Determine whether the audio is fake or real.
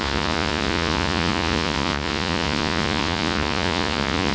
fake